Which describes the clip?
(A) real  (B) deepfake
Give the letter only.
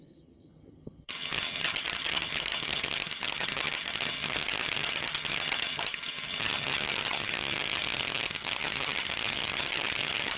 B